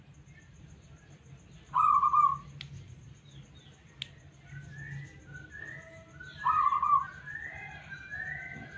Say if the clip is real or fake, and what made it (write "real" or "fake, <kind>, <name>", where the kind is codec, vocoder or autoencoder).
real